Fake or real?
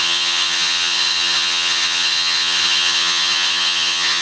fake